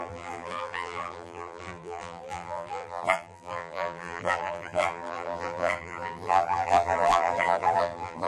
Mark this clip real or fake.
fake